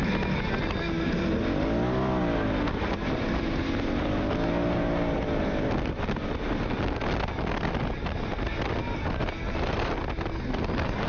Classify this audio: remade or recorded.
recorded